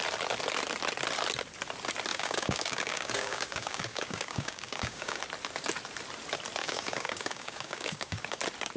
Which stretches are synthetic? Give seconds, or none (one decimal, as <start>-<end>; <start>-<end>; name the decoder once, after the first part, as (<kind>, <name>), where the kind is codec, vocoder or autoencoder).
2.1-5.2 (codec, DAC); 6.6-8.4